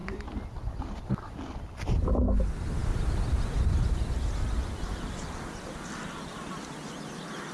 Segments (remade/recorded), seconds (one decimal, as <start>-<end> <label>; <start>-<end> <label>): 0.0-7.5 recorded